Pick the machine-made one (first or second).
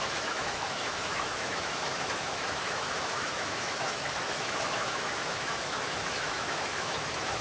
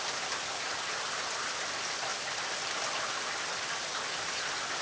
first